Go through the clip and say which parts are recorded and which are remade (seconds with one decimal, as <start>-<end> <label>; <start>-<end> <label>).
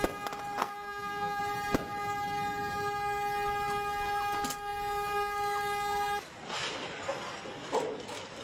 0.0-0.6 recorded; 0.6-1.4 remade; 1.4-8.4 recorded